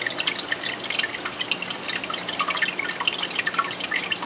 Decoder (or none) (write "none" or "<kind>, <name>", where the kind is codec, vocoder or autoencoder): none